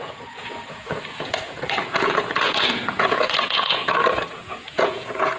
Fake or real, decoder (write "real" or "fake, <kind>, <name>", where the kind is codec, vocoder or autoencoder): fake, vocoder, Vocos